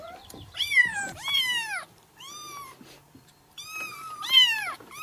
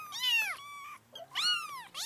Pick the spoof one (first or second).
first